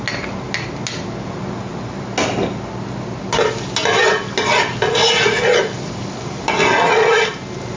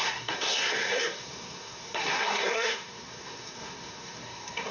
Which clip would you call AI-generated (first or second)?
second